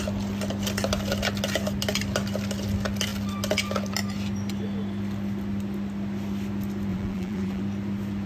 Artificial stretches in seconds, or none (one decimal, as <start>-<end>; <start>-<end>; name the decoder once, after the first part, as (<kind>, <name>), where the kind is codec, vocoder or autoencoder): 6.9-7.6 (vocoder, BigVGAN v2)